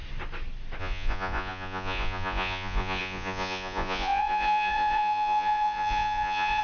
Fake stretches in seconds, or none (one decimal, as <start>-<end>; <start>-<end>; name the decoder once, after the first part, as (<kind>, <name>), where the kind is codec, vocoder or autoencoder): 0.8-6.6 (vocoder, Vocos)